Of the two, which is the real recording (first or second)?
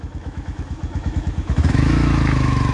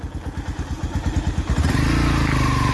second